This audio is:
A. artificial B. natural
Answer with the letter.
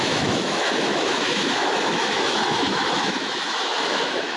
A